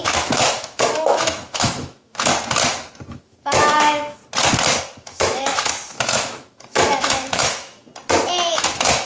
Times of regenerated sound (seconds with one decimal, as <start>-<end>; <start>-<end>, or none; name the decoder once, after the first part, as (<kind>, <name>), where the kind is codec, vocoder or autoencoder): 0.0-2.3 (autoencoder, DAC-VAE); 3.1-4.2; 5.0-7.9; 8.5-9.1